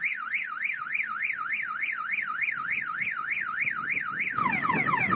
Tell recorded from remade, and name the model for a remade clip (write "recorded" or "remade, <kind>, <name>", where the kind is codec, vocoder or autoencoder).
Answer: recorded